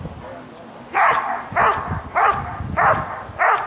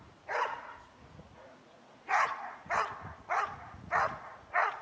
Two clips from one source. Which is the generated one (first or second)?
second